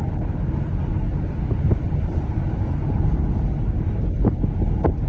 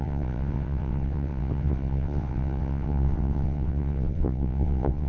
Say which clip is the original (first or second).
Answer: first